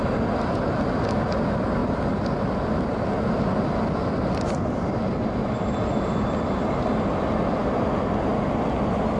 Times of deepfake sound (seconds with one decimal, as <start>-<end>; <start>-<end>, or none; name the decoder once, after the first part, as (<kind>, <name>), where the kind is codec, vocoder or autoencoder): none